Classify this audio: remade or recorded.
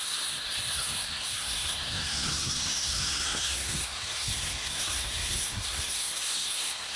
remade